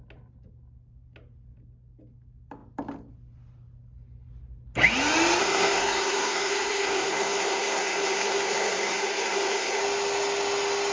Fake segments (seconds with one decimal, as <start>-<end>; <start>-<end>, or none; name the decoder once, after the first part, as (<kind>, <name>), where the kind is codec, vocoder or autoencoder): 5.4-9.8 (codec, SNAC)